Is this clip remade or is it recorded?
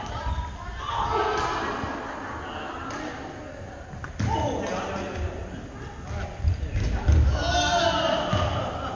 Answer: recorded